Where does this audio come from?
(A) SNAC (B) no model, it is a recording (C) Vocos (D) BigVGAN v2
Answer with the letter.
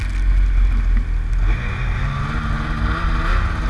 B